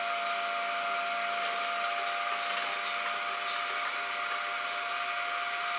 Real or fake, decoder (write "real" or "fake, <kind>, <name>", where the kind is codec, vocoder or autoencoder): real